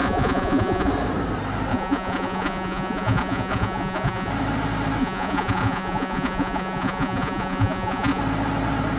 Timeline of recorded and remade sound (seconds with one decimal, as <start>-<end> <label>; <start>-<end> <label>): 0.0-0.9 remade; 0.9-1.7 recorded; 1.7-4.3 remade; 4.3-5.0 recorded; 5.0-8.2 remade; 8.2-9.0 recorded